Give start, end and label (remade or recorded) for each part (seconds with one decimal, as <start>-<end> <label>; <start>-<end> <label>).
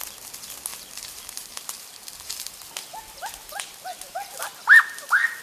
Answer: 0.0-3.9 recorded; 3.9-5.4 remade